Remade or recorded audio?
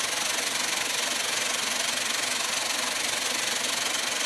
recorded